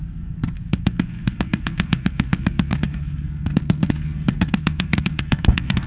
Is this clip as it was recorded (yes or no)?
no